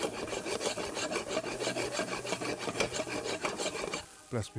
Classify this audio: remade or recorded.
recorded